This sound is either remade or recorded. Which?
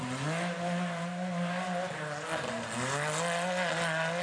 recorded